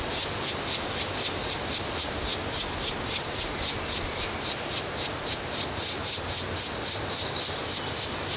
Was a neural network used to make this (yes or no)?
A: no